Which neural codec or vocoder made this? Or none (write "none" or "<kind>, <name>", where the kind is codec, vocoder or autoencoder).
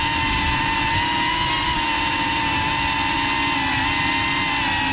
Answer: none